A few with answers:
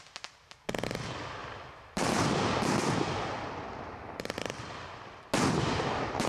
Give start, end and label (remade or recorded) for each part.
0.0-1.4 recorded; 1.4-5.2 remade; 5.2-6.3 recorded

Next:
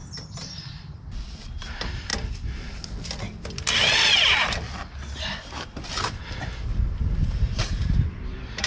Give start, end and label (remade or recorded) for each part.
0.0-1.4 recorded; 1.4-2.1 remade; 2.1-5.2 recorded; 5.2-8.7 remade

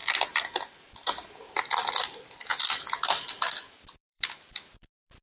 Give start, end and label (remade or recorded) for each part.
0.0-1.7 recorded; 1.7-2.5 remade; 2.5-3.7 recorded; 3.7-5.2 remade